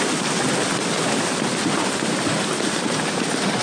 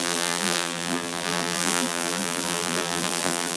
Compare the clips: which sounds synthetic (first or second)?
second